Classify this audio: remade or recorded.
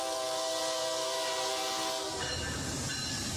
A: remade